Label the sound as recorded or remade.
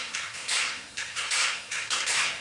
remade